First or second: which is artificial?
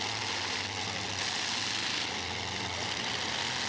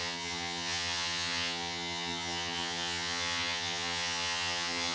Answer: second